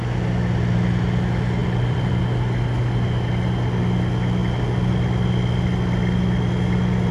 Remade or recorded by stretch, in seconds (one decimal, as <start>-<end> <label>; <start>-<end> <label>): 0.0-1.6 recorded; 1.6-2.2 remade; 2.2-7.1 recorded